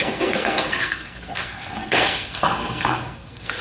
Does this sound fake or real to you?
fake